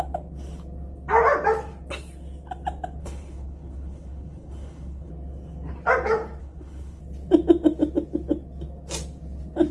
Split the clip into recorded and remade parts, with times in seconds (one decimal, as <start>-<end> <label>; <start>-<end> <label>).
0.0-3.0 recorded; 3.0-5.1 remade; 5.1-6.4 recorded; 6.4-7.0 remade; 7.0-9.7 recorded

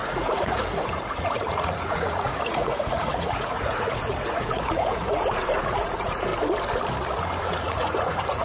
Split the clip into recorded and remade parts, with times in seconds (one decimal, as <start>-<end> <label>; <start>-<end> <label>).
0.0-6.3 remade; 6.3-7.6 recorded; 7.6-8.4 remade

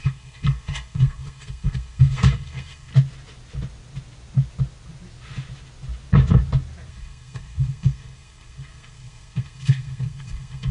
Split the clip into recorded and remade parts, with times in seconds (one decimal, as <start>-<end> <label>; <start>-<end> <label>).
0.0-2.9 remade; 2.9-6.9 recorded; 6.9-10.7 remade

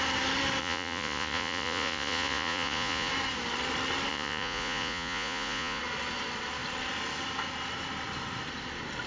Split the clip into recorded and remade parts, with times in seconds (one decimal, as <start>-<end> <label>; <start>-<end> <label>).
0.0-0.6 recorded; 0.6-3.1 remade; 3.1-4.1 recorded; 4.1-5.8 remade; 5.8-9.1 recorded

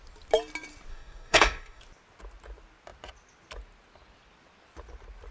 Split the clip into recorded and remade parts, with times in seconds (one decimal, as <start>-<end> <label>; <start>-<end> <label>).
0.0-0.9 recorded; 0.9-1.8 remade; 1.8-5.3 recorded

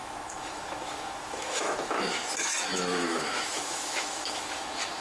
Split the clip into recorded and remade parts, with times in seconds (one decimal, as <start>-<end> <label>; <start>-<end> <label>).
0.0-5.0 remade